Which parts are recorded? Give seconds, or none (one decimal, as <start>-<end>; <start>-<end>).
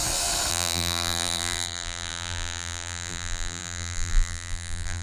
0.0-0.5